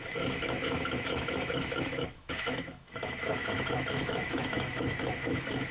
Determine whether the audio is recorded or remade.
remade